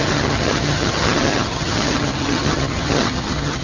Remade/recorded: remade